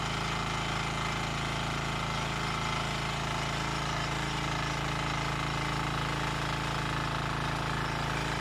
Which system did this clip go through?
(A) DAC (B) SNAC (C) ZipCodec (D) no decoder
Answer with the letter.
D